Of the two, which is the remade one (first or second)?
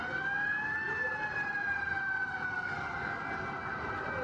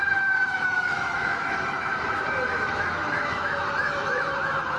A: second